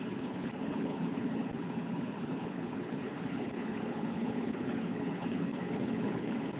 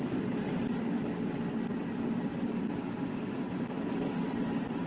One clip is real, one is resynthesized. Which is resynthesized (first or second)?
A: first